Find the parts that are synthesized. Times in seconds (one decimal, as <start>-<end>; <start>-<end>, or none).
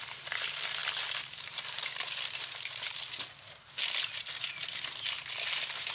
none